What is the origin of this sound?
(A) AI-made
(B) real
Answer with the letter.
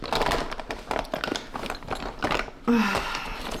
B